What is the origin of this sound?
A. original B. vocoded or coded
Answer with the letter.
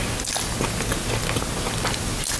A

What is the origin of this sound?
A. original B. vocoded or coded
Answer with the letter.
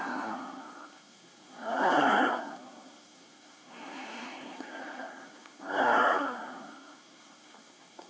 B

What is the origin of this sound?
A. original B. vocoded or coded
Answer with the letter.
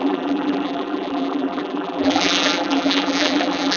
B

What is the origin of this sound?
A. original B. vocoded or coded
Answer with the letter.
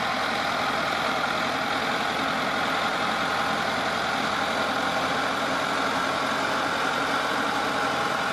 A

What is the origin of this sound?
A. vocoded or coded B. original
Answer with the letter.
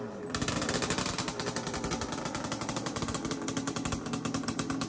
B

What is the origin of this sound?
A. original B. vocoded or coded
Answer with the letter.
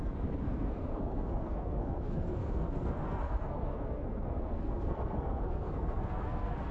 B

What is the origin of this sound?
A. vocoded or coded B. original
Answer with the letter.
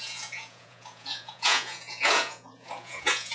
A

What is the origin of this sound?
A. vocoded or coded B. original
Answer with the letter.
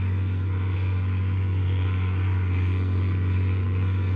A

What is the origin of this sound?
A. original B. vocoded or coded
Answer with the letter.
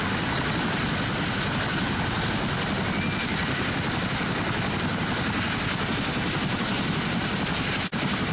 A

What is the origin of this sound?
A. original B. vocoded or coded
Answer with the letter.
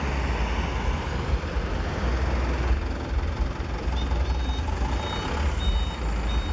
A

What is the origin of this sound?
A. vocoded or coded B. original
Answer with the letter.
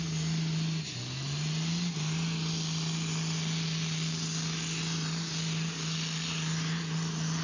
B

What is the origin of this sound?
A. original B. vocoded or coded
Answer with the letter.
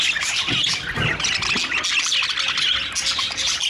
A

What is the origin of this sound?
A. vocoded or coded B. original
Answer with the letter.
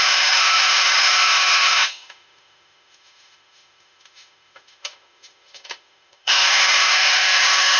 A